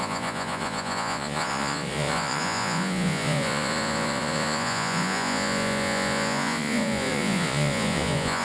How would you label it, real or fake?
fake